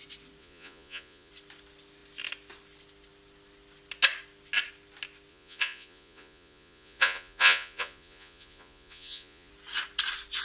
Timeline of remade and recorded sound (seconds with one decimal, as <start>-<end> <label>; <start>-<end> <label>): 0.0-0.4 recorded; 0.4-1.3 remade; 1.3-5.3 recorded; 5.3-9.5 remade; 9.5-10.4 recorded